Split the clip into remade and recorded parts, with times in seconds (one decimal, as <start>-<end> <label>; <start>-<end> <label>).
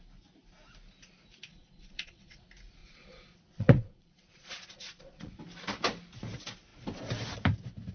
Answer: 0.0-1.5 recorded; 1.5-2.4 remade; 2.4-2.8 recorded; 2.8-5.4 remade; 5.4-7.9 recorded